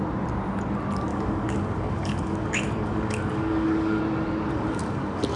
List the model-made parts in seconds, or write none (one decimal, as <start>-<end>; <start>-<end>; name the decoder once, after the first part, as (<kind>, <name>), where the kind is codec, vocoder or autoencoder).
1.1-4.0 (codec, DAC); 4.5-5.4